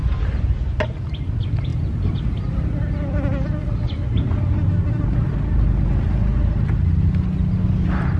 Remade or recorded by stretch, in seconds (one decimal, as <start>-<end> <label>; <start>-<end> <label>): 0.0-0.8 remade; 0.8-8.2 recorded

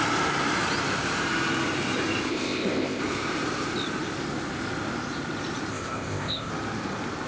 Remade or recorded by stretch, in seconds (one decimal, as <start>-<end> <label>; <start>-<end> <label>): 0.0-2.3 recorded; 2.3-3.0 remade; 3.0-5.7 recorded; 5.7-6.5 remade; 6.5-7.3 recorded